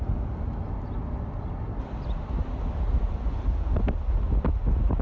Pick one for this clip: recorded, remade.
recorded